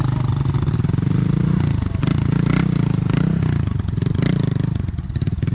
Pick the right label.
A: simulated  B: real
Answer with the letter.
B